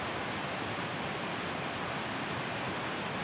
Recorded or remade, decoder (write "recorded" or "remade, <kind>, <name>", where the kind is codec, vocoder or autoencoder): recorded